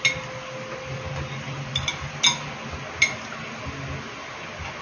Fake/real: real